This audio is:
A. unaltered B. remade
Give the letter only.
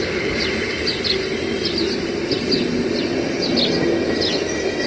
A